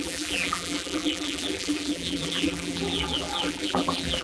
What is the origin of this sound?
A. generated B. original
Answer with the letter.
A